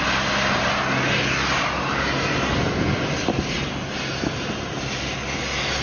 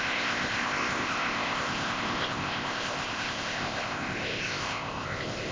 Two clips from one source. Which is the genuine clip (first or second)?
first